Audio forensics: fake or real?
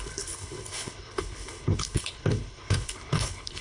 fake